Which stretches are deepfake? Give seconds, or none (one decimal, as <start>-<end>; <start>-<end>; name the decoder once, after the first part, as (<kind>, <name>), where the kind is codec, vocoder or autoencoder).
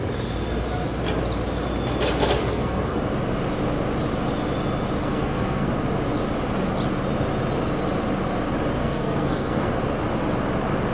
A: 2.4-3.0 (codec, SNAC); 5.0-5.7; 8.8-9.7